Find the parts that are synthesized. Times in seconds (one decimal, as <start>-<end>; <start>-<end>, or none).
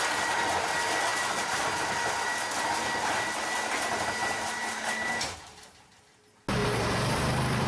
1.1-1.9; 4.2-6.0; 6.6-7.7